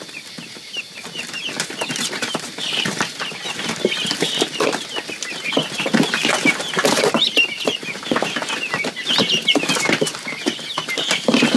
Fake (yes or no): no